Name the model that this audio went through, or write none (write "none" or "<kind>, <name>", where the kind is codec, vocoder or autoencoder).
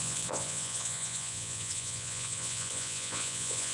vocoder, Vocos